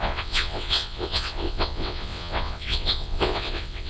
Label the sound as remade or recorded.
remade